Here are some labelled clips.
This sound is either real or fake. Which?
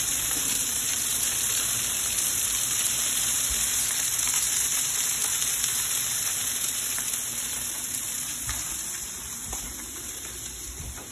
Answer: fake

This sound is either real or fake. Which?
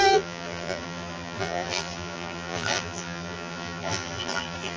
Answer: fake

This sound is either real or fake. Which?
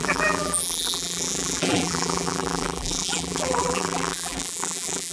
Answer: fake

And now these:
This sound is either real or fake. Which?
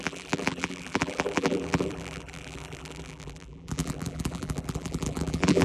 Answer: fake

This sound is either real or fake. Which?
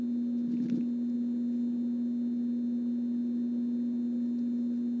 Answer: real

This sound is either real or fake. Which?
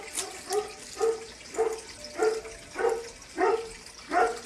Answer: real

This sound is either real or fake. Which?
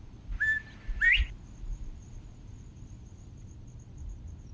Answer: real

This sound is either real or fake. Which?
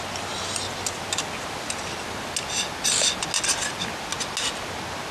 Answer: real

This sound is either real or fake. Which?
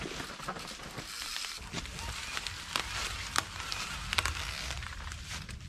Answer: real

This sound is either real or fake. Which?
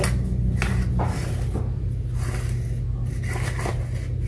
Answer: real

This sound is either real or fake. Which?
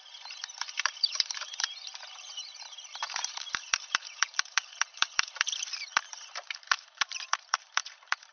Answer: fake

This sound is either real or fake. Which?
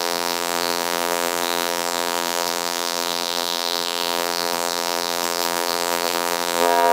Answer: fake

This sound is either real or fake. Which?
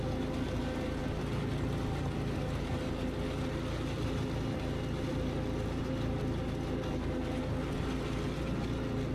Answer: real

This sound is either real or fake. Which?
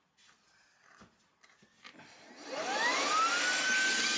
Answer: real